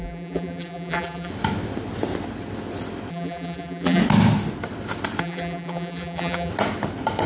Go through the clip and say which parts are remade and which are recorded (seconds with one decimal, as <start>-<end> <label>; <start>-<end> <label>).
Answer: 0.0-1.3 remade; 1.3-3.1 recorded; 3.1-4.0 remade; 4.0-5.2 recorded; 5.2-6.5 remade; 6.5-7.3 recorded